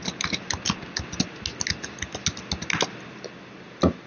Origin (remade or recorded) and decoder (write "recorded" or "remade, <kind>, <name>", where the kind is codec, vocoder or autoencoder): recorded